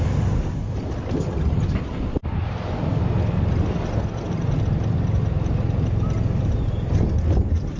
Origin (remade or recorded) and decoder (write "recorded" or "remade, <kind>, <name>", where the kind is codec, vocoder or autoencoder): recorded